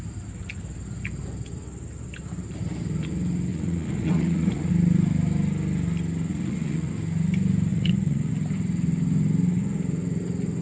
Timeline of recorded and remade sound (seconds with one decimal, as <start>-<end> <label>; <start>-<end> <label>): 0.0-3.5 recorded; 3.5-4.7 remade; 4.7-6.3 recorded; 6.3-6.9 remade; 6.9-7.7 recorded; 7.7-8.3 remade; 8.3-10.6 recorded